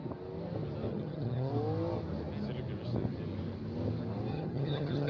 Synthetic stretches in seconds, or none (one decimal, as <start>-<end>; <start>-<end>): 0.9-1.5; 4.3-5.1